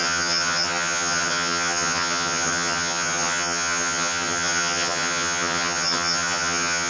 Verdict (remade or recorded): remade